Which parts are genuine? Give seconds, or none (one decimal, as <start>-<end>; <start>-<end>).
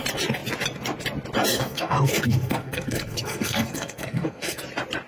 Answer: 0.0-1.5; 4.6-5.1